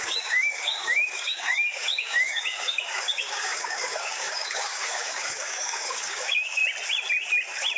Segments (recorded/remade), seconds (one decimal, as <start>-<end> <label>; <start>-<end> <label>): 0.0-6.6 remade; 6.6-7.8 recorded

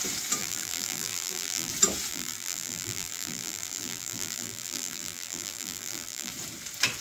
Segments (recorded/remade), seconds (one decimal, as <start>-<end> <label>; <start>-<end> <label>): 0.0-0.4 recorded; 0.4-1.7 remade; 1.7-2.1 recorded; 2.1-6.3 remade; 6.3-7.0 recorded

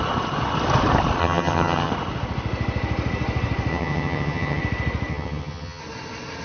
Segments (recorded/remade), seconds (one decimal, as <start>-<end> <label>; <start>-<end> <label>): 0.0-1.2 recorded; 1.2-1.9 remade; 1.9-3.7 recorded; 3.7-4.6 remade; 4.6-5.1 recorded; 5.1-5.8 remade; 5.8-6.4 recorded

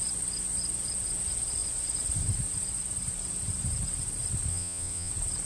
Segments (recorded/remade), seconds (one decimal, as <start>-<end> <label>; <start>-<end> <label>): 0.0-4.5 recorded; 4.5-5.1 remade; 5.1-5.5 recorded

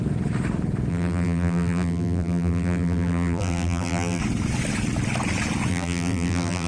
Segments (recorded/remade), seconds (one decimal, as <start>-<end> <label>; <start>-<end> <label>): 0.0-0.9 recorded; 0.9-4.2 remade; 4.2-5.7 recorded; 5.7-6.7 remade

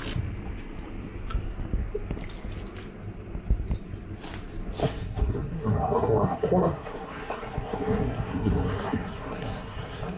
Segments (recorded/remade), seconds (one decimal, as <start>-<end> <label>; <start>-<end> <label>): 0.0-4.8 recorded; 4.8-10.2 remade